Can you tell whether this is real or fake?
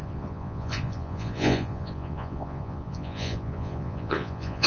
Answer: fake